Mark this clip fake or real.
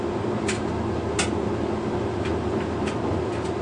real